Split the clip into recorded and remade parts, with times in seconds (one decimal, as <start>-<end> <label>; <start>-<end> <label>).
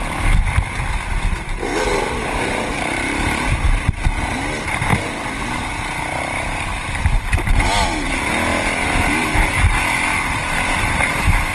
0.0-1.7 recorded; 1.7-3.5 remade; 3.5-11.5 recorded